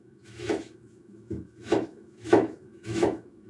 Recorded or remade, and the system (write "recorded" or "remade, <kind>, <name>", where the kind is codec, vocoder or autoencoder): remade, autoencoder, DAC-VAE